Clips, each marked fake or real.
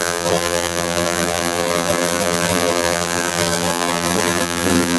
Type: fake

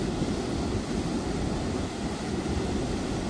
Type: real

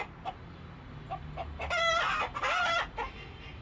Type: real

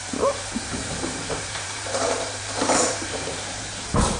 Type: fake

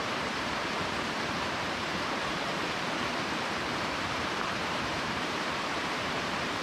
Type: fake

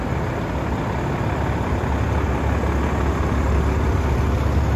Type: real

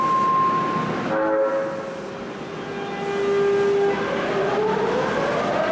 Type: real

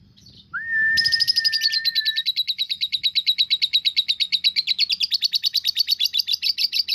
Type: real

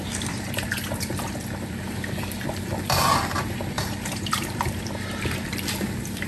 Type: fake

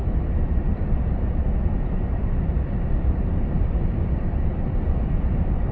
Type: fake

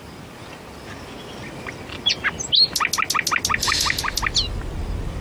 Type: real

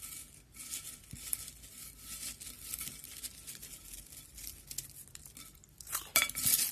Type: real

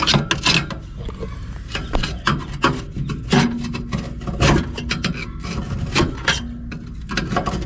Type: real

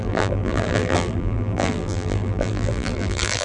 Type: fake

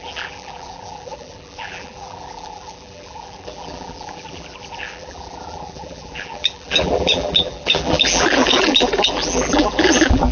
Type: fake